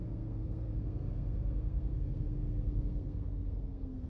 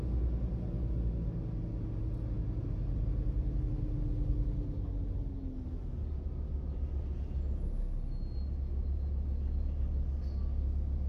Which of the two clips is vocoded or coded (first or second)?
first